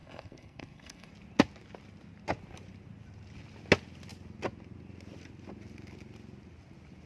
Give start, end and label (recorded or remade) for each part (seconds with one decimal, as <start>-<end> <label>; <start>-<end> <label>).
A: 0.0-1.1 remade; 1.1-7.1 recorded